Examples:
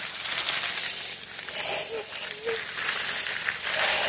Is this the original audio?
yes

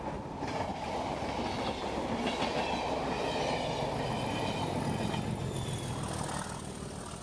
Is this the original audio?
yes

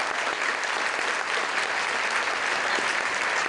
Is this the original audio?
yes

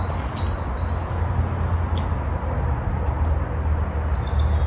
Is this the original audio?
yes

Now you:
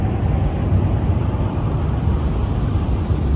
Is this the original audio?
yes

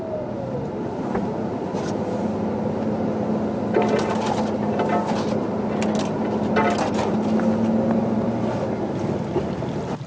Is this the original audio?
yes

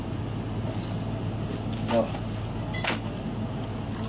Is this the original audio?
yes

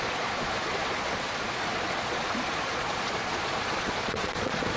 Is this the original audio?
no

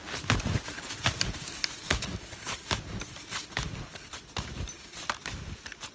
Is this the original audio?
yes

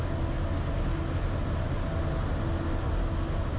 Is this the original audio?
yes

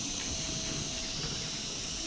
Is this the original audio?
yes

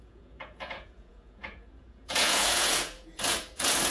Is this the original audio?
no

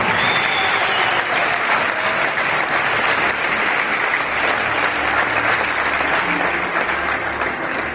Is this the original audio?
yes